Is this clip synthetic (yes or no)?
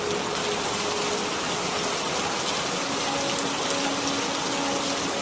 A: no